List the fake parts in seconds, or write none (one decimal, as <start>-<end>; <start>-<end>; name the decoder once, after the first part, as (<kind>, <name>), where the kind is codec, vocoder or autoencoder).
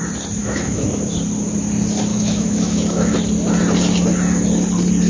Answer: 0.4-1.0 (autoencoder, DAC-VAE); 2.1-3.2